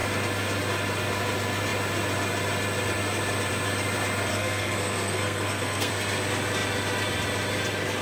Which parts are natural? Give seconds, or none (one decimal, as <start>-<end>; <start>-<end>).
0.0-4.3; 5.9-8.0